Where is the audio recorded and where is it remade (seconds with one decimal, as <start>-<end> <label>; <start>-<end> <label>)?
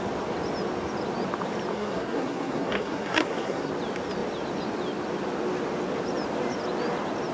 0.0-1.7 recorded; 1.7-3.7 remade; 3.7-7.3 recorded